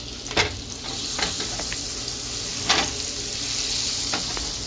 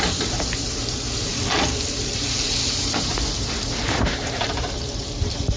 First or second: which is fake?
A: second